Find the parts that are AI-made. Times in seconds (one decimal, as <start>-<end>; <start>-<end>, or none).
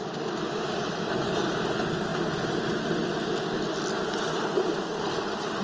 none